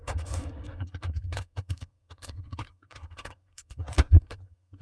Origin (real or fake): fake